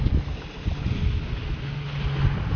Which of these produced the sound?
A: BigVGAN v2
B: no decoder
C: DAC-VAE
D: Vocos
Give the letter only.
B